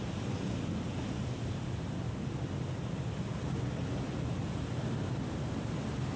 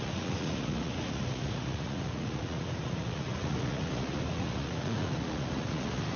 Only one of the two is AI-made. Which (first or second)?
second